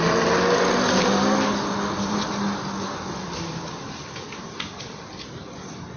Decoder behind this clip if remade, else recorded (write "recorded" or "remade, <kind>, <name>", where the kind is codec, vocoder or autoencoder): recorded